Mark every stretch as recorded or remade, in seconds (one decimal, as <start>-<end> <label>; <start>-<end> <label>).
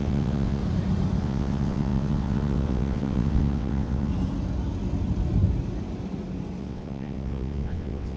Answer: 0.0-0.6 remade; 0.6-1.2 recorded; 1.2-4.1 remade; 4.1-6.6 recorded; 6.6-8.2 remade